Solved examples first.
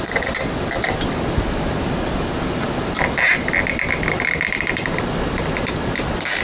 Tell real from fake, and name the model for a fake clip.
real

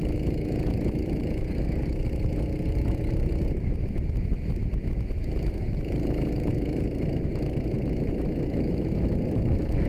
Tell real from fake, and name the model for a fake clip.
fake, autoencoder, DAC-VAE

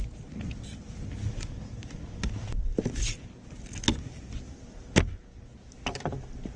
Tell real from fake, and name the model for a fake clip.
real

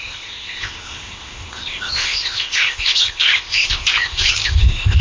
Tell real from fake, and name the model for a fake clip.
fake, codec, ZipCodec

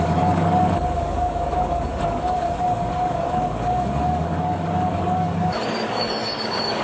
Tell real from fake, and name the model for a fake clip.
fake, codec, DAC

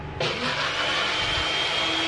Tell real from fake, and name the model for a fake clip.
real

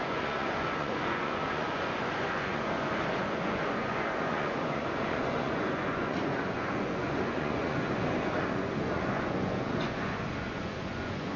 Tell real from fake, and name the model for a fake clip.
fake, vocoder, Vocos